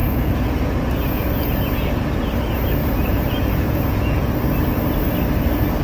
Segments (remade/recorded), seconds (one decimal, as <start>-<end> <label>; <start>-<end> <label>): 0.0-2.2 remade; 2.2-2.8 recorded; 2.8-4.3 remade; 4.3-5.8 recorded